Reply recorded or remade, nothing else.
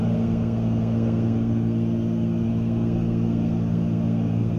remade